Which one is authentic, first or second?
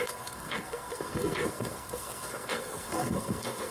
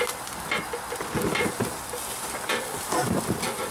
second